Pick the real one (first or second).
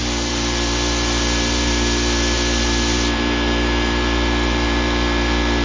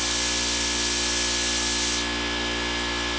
second